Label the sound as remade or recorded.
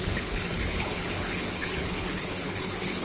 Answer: remade